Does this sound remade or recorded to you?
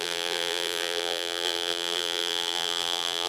remade